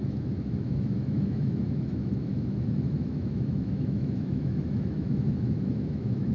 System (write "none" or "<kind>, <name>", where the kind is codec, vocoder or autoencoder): autoencoder, DAC-VAE